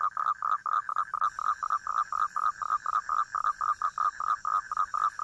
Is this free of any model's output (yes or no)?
yes